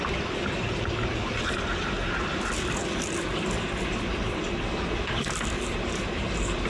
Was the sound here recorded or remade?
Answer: recorded